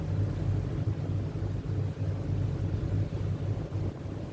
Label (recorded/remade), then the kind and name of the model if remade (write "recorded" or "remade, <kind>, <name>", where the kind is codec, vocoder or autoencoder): recorded